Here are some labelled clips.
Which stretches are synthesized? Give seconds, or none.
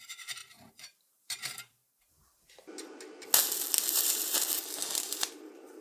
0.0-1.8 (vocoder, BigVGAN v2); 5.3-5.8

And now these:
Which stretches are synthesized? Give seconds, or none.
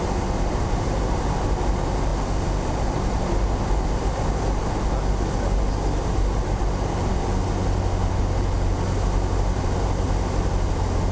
none